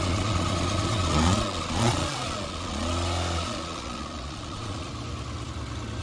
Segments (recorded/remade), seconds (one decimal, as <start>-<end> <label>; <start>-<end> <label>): 0.0-4.9 remade; 4.9-6.0 recorded